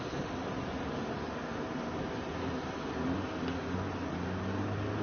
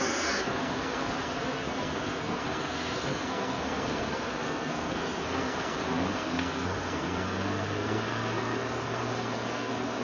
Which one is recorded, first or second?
first